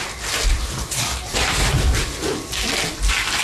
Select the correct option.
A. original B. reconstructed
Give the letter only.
A